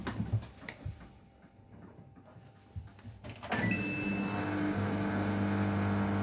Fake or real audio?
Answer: real